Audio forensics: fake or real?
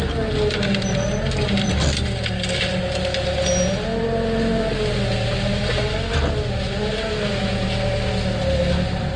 real